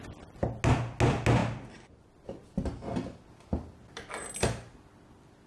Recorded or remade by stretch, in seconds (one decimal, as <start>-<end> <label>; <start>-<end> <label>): 0.0-5.5 recorded